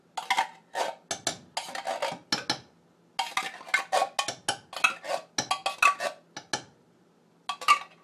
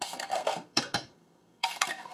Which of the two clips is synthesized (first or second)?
second